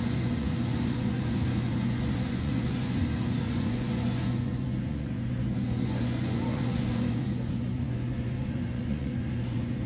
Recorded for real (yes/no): no